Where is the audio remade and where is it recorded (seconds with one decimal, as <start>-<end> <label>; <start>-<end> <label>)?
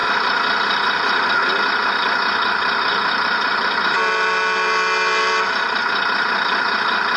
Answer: 0.0-7.2 recorded